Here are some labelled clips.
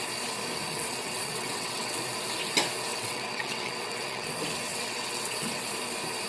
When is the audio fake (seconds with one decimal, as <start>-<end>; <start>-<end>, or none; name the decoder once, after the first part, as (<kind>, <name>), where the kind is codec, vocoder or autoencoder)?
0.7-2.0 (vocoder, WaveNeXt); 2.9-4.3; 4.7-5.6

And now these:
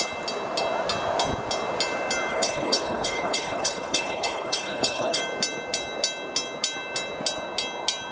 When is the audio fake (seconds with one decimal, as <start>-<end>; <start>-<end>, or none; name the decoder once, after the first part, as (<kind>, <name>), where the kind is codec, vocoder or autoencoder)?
2.3-5.2 (codec, HILCodec)

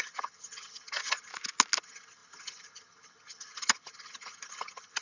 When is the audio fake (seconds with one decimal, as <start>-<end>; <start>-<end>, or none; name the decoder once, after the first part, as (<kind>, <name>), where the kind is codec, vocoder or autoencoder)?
0.0-1.3 (vocoder, HiFi-GAN); 1.8-5.0